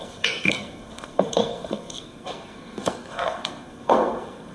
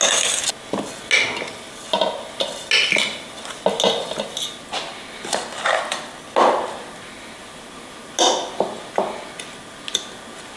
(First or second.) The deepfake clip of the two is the first